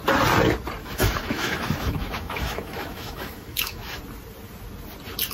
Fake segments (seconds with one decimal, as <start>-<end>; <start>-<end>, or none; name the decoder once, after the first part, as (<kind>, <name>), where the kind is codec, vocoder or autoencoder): 0.8-4.0 (autoencoder, DAC-VAE)